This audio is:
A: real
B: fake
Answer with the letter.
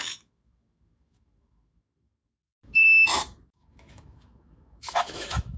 B